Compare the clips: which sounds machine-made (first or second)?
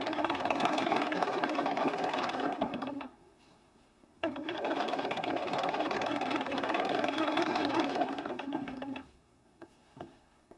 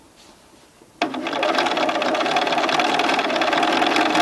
first